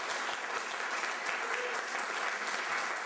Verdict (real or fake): real